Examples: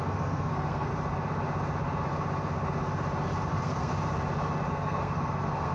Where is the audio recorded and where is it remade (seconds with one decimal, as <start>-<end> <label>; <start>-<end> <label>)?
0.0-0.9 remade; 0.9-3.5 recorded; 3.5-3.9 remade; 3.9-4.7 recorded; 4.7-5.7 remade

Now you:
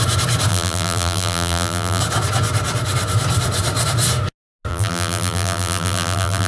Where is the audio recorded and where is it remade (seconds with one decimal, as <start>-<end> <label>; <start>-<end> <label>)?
0.0-0.5 recorded; 0.5-2.0 remade; 2.0-4.7 recorded; 4.7-6.5 remade

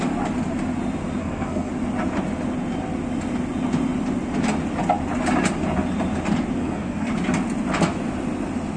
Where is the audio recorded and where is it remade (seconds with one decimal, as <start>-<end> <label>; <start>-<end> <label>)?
0.0-1.2 recorded; 1.2-1.7 remade; 1.7-6.6 recorded; 6.6-7.1 remade; 7.1-8.8 recorded

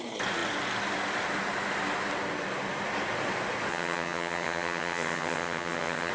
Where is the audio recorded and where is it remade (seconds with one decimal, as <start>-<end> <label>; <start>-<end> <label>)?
0.0-3.7 recorded; 3.7-6.1 remade

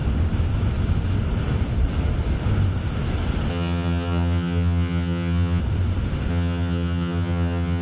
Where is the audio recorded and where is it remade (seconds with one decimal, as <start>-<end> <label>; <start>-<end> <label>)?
0.0-3.5 recorded; 3.5-5.6 remade; 5.6-6.3 recorded; 6.3-7.8 remade